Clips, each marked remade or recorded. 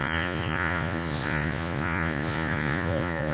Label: remade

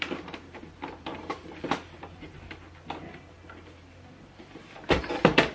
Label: remade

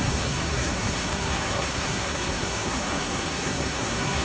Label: remade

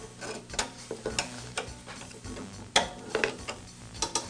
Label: recorded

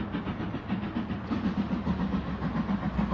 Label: recorded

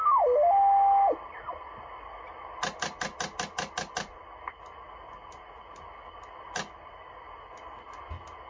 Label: recorded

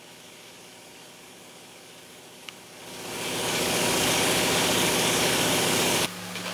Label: remade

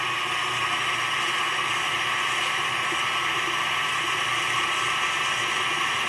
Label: recorded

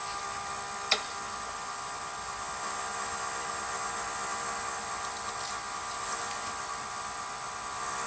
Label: recorded